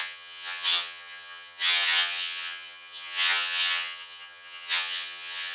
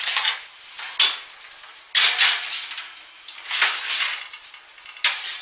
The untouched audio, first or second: second